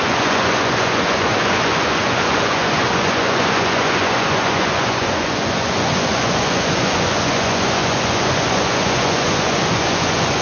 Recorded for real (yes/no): no